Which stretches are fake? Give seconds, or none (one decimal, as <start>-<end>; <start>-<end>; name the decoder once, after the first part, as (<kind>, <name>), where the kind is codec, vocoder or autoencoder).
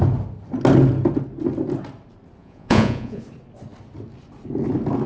2.4-3.2 (vocoder, Vocos)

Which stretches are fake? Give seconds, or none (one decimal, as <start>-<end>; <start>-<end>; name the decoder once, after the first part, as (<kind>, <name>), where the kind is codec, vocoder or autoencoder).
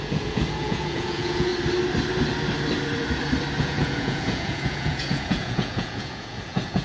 0.0-1.5 (vocoder, Vocos); 3.6-6.8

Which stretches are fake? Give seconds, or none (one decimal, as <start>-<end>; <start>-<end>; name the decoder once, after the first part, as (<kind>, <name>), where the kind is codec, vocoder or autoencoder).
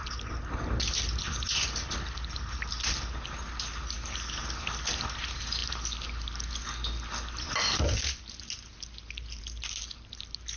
none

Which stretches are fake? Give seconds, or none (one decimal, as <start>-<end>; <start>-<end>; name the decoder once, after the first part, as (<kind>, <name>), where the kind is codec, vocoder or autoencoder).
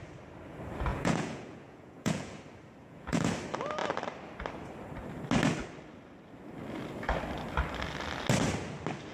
0.9-2.4 (vocoder, Vocos); 2.8-3.3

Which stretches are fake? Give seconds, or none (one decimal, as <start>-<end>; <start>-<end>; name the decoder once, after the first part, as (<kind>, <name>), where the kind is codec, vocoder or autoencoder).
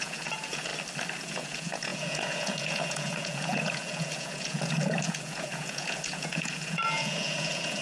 0.0-0.7 (vocoder, Vocos); 1.2-7.8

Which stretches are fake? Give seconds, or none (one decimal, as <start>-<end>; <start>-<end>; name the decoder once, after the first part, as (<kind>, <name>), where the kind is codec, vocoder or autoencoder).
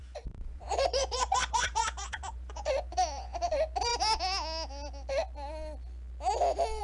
0.0-3.5 (vocoder, Vocos)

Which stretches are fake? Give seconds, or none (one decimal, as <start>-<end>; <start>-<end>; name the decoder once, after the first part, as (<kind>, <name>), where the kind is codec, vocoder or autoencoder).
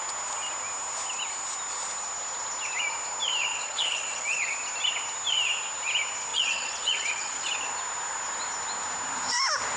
3.5-4.5 (vocoder, Vocos); 6.3-7.5